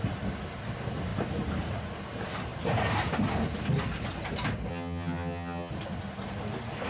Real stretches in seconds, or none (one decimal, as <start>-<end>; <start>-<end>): 0.0-4.7; 5.7-6.9